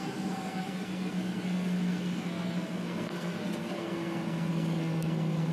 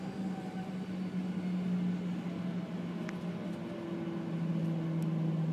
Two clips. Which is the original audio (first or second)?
second